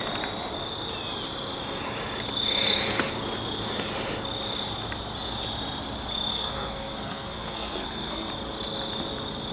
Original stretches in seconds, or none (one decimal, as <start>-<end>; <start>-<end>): 0.0-6.3; 8.3-9.5